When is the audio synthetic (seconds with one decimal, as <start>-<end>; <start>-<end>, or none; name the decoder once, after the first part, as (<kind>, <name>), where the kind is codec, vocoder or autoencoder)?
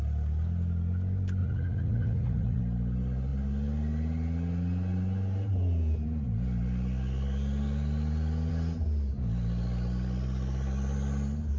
1.4-2.6 (vocoder, Vocos)